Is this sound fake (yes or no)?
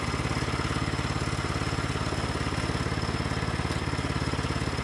no